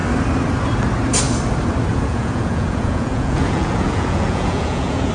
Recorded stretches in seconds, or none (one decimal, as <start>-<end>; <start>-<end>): 0.0-1.9